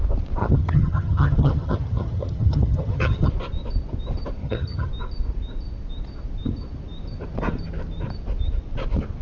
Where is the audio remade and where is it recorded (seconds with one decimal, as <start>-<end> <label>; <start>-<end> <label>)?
0.0-0.4 recorded; 0.4-3.3 remade; 3.3-4.4 recorded; 4.4-4.9 remade; 4.9-9.2 recorded